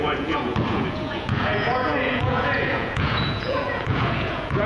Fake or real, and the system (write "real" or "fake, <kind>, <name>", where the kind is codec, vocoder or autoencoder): fake, vocoder, Vocos